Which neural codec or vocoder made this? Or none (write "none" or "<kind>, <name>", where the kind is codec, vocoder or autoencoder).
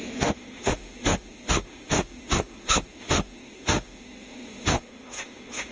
autoencoder, DAC-VAE